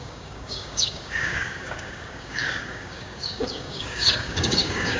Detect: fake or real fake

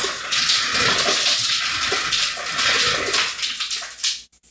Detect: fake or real real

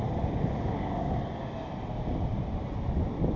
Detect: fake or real real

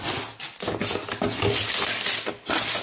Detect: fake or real real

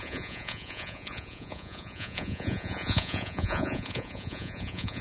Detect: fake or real fake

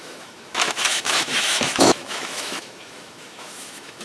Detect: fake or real fake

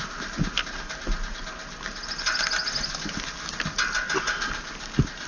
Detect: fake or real real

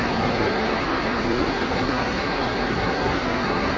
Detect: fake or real fake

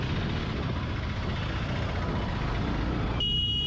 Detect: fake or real real